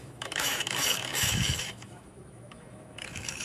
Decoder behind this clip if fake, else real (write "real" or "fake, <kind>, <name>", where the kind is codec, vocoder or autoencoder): fake, autoencoder, DAC-VAE